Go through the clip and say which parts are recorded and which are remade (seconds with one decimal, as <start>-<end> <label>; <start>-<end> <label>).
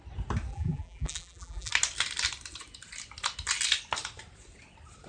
0.0-0.5 recorded; 0.5-1.7 remade; 1.7-5.1 recorded